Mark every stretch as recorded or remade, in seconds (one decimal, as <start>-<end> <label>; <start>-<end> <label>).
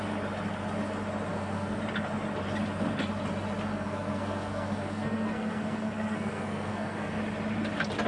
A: 0.0-1.3 recorded; 1.3-1.8 remade; 1.8-3.7 recorded; 3.7-7.2 remade; 7.2-8.1 recorded